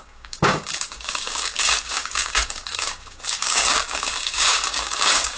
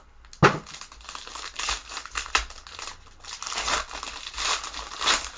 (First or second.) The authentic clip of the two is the second